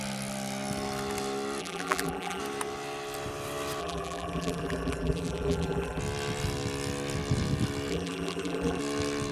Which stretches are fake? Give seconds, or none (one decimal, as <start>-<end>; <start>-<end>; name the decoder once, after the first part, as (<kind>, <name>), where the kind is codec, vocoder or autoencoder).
1.6-2.4 (vocoder, BigVGAN v2); 3.8-6.0; 7.9-8.8